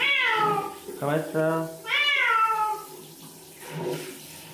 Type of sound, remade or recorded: recorded